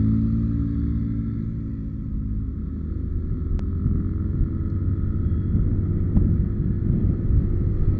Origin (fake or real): real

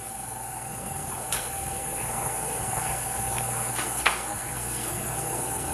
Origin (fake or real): fake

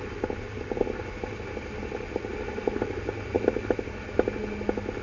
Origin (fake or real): real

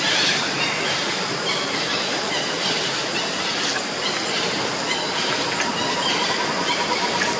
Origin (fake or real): real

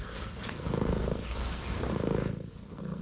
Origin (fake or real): fake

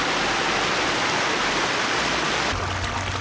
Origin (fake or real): real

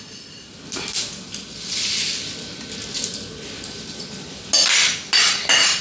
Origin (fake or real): real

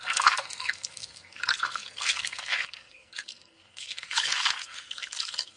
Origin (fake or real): fake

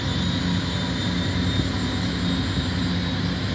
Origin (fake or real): real